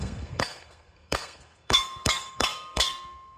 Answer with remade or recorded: remade